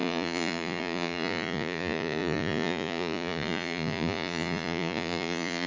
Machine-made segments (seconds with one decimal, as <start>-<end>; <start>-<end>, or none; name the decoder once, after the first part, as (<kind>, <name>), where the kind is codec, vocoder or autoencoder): 0.0-5.7 (vocoder, Vocos)